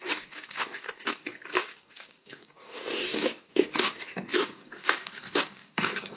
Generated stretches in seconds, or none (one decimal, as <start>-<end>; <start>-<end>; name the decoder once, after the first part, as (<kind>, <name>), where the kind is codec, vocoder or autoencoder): 0.0-6.2 (codec, DAC)